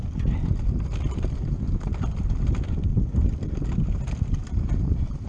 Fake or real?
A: real